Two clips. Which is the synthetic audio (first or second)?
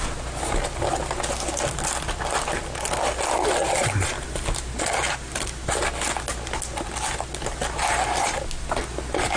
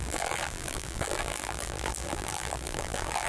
second